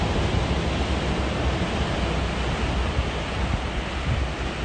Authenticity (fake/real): real